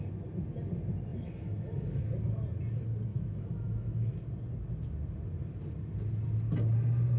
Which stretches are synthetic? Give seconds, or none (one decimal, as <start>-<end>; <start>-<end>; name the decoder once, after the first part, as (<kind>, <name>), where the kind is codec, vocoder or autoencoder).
1.1-2.0 (autoencoder, DAC-VAE); 3.1-4.1

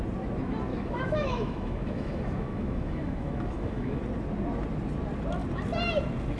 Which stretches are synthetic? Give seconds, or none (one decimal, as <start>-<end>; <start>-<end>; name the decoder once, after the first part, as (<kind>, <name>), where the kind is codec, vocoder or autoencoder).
0.7-4.0 (autoencoder, DAC-VAE)